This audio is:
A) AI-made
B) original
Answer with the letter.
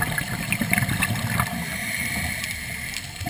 B